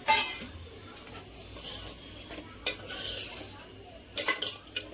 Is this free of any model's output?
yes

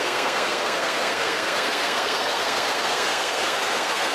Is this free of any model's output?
no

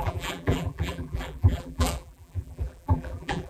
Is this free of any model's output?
no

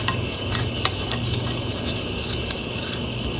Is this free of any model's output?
no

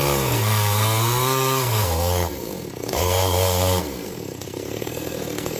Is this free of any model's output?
no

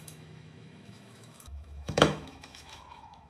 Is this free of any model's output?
no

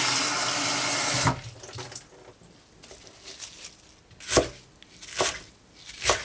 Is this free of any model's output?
yes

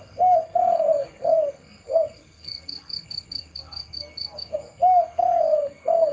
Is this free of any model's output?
no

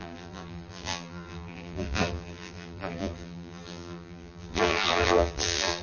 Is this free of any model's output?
no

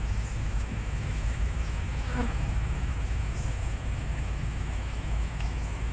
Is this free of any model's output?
no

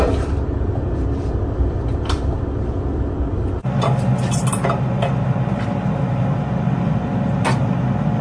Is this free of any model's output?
yes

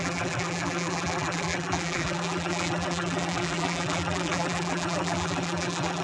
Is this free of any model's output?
no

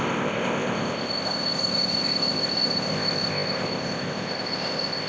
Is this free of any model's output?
no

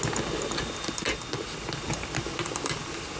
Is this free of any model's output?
yes